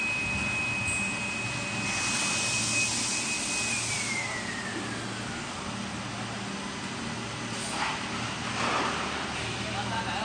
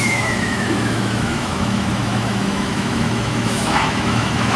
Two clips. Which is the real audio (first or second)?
first